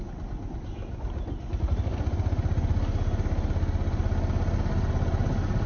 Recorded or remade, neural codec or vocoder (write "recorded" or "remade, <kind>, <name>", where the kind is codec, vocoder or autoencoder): recorded